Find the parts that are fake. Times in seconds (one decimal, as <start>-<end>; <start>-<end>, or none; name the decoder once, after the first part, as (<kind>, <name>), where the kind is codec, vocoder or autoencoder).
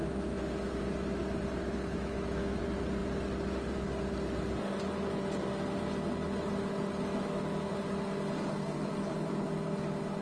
0.0-0.8 (autoencoder, DAC-VAE); 1.9-2.6; 7.1-7.7